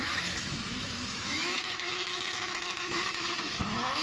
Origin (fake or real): fake